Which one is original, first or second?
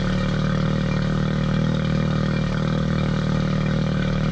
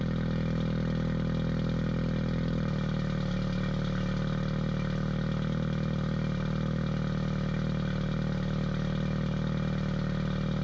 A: second